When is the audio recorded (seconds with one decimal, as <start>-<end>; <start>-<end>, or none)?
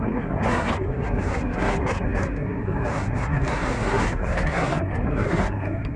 none